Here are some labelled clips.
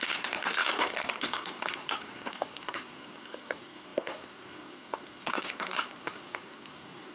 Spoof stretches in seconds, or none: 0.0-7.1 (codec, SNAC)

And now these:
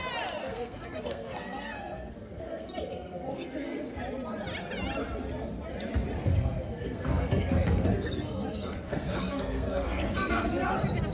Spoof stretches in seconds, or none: 0.4-4.0 (codec, SNAC); 6.2-10.5

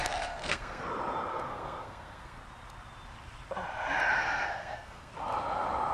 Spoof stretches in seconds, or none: 0.0-0.8 (codec, SNAC); 1.3-2.4; 4.2-5.1

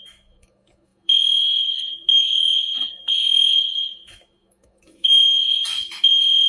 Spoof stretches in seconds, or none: 0.0-6.5 (autoencoder, DAC-VAE)

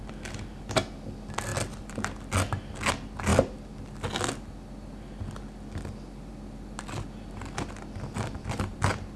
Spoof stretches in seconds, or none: none

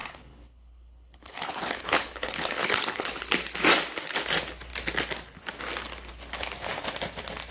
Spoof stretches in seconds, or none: 0.0-3.2 (codec, HILCodec)

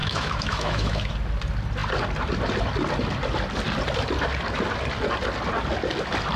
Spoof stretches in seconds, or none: 0.0-1.1 (autoencoder, DAC-VAE)

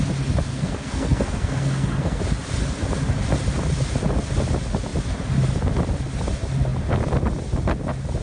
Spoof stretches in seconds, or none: 0.5-2.2 (codec, SNAC)